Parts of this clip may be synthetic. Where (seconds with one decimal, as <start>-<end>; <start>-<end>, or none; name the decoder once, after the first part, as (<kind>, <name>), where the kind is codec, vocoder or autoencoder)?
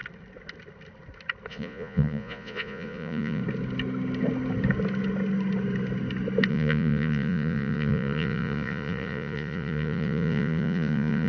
1.5-3.4 (vocoder, Vocos); 6.5-11.3